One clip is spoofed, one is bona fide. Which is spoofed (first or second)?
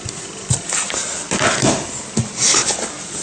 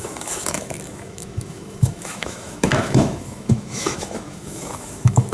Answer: second